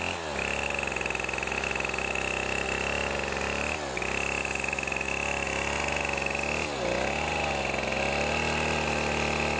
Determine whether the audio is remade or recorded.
recorded